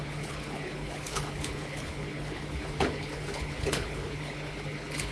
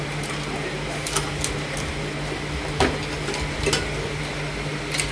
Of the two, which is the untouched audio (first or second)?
second